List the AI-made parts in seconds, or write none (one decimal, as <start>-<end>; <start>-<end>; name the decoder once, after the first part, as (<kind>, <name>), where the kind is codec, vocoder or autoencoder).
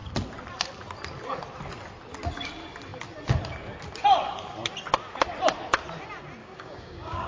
6.4-7.3 (codec, DAC)